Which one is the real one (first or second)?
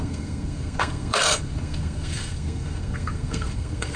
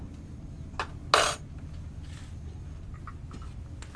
second